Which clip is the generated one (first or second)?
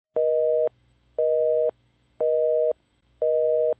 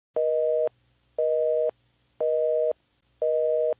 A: first